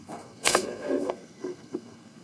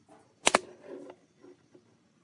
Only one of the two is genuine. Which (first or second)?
second